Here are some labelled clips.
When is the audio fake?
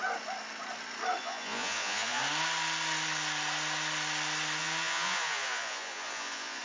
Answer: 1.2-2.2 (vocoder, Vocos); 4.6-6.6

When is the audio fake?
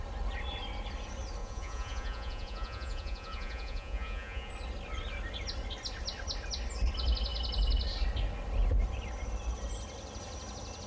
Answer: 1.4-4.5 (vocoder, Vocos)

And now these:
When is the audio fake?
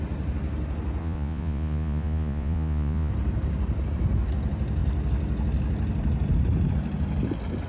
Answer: 1.0-3.1 (vocoder, Vocos)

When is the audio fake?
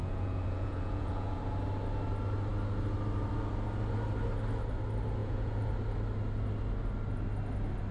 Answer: 0.0-1.4 (vocoder, Vocos); 5.2-5.7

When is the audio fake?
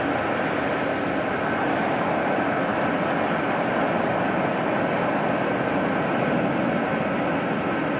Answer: none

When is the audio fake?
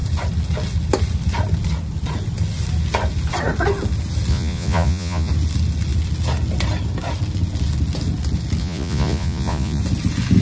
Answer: 4.3-5.3 (vocoder, Vocos); 8.6-9.8